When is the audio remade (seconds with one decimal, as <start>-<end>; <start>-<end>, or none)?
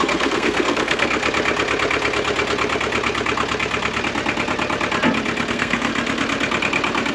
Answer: 0.0-1.2; 5.5-5.9